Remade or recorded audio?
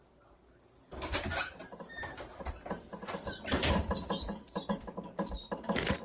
recorded